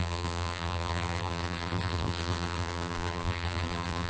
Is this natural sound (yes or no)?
no